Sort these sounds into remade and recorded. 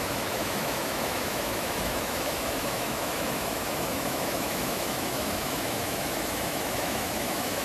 remade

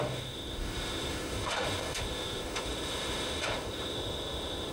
remade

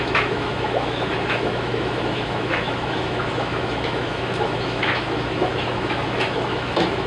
remade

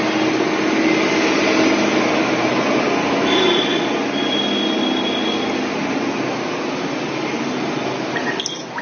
recorded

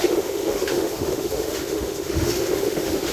remade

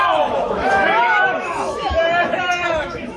remade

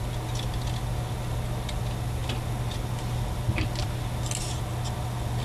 recorded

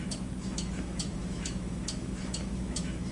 remade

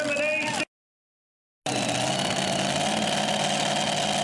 recorded